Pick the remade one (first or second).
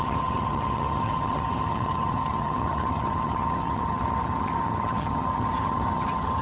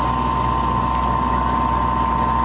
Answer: first